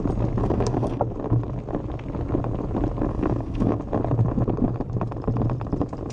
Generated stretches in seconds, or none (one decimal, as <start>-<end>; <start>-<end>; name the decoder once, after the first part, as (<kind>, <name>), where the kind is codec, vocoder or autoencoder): 0.4-1.0 (codec, SNAC); 3.1-3.8